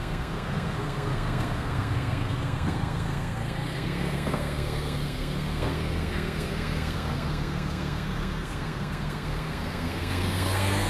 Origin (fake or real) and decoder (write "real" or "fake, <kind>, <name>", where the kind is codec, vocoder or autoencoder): fake, codec, SNAC